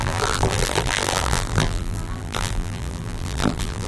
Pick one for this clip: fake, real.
fake